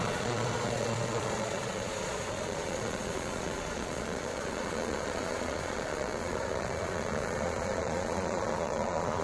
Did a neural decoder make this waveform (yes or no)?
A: yes